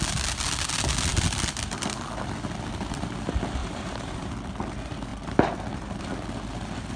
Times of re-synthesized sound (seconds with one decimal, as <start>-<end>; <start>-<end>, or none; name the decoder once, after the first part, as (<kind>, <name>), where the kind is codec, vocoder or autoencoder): 3.6-4.3 (vocoder, BigVGAN v2)